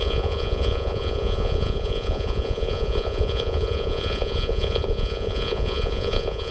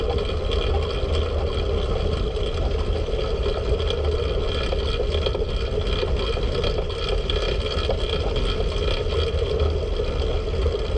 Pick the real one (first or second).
second